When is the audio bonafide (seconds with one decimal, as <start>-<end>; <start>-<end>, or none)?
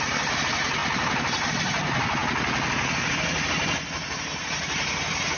0.0-0.8; 1.5-5.4